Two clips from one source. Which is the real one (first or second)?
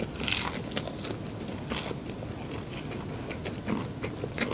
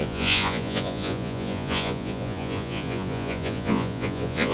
first